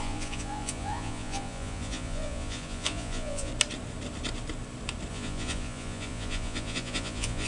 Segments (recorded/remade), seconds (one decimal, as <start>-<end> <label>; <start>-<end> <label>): 0.0-3.5 remade; 3.5-5.1 recorded; 5.1-7.5 remade